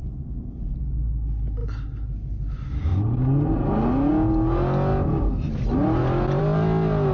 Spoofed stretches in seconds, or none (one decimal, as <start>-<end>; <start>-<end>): none